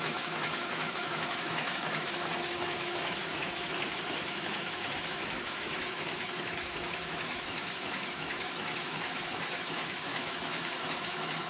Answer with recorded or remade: remade